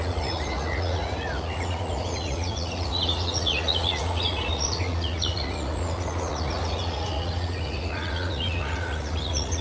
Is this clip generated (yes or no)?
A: yes